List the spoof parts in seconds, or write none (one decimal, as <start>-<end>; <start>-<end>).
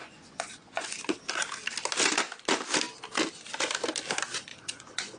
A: 0.0-1.2; 4.3-5.2